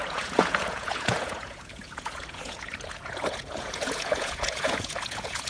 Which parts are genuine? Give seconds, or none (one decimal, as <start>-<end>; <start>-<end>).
none